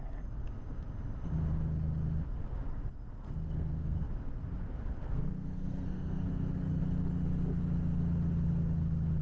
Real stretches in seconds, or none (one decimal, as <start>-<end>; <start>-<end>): 0.0-3.2; 4.0-5.0; 6.8-9.2